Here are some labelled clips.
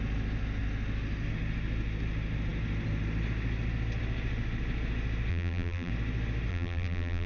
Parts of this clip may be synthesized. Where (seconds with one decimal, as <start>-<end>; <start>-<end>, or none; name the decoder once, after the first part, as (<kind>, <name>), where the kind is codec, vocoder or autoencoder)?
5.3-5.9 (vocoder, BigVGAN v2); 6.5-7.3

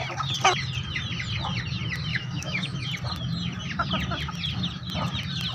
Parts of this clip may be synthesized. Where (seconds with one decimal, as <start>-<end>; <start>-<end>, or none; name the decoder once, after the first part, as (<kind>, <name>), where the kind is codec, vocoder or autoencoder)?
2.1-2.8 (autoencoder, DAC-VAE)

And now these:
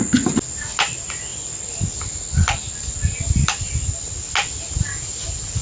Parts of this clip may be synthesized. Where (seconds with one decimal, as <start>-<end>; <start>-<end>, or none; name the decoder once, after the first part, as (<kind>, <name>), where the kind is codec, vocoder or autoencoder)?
none

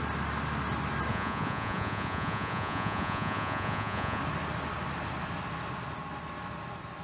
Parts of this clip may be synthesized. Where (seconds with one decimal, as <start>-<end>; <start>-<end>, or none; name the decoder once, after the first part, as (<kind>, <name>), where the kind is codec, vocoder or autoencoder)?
1.1-4.2 (vocoder, Vocos)